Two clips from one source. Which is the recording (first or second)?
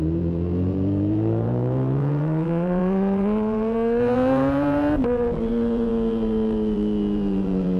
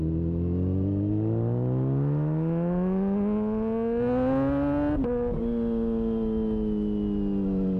second